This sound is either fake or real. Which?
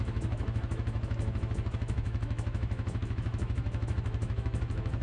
fake